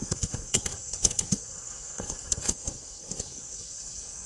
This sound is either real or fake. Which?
fake